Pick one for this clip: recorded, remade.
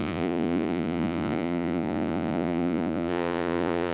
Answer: remade